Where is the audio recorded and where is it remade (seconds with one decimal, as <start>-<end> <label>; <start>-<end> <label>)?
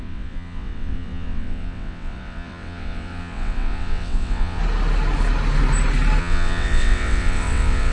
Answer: 0.0-4.6 remade; 4.6-6.2 recorded; 6.2-7.9 remade